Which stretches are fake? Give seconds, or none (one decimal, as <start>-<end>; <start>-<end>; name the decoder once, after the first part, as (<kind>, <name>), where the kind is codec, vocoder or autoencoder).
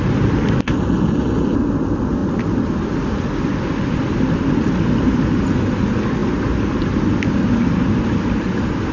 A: none